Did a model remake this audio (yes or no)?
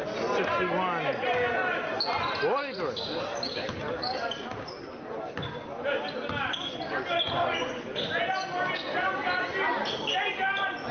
no